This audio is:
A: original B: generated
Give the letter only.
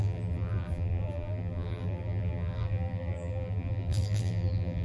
B